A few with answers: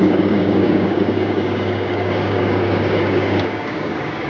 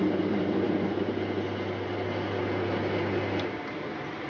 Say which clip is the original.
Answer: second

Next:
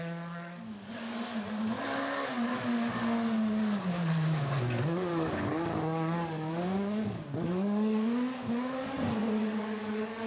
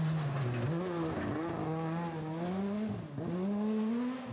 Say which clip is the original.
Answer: second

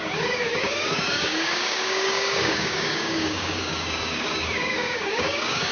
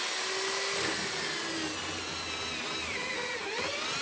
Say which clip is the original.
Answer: second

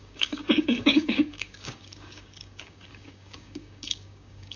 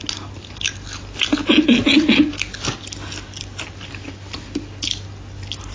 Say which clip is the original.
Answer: second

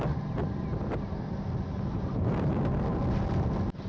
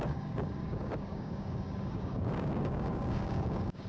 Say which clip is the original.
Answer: first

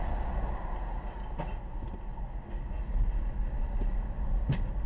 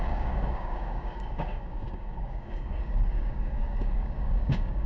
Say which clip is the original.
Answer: first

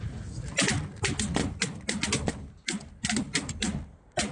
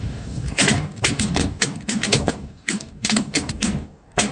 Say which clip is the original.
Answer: first